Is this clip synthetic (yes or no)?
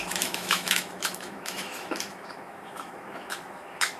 yes